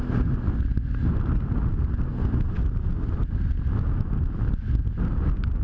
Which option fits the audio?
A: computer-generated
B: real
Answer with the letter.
B